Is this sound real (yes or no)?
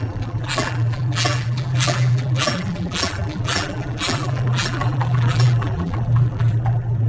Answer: no